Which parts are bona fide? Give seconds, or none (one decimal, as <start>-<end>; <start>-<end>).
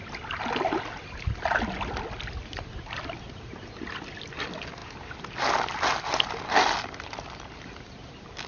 0.0-8.5